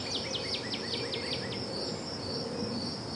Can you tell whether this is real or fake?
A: real